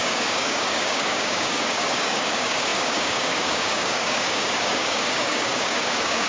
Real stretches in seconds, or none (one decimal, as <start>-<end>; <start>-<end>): none